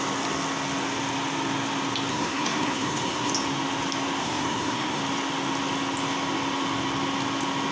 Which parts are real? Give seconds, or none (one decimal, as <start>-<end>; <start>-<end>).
0.0-2.1; 3.3-4.2; 5.0-7.7